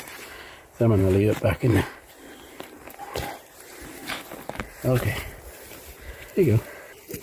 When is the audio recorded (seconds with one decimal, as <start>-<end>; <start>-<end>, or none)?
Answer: 0.0-1.0; 5.3-7.2